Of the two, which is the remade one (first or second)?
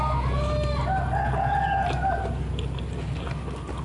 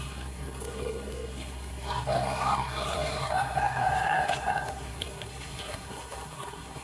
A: second